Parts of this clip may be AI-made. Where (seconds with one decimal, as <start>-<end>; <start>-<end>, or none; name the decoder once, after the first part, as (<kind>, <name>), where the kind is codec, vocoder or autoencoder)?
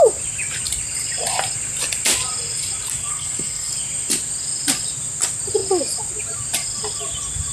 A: 3.1-3.7 (codec, SNAC)